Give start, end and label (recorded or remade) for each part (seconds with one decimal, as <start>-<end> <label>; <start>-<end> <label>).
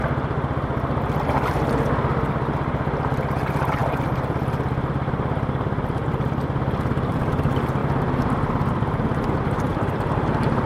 0.0-3.8 recorded; 3.8-7.3 remade; 7.3-7.8 recorded; 7.8-8.7 remade; 8.7-9.7 recorded; 9.7-10.7 remade